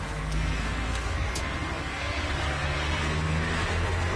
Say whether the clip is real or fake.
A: fake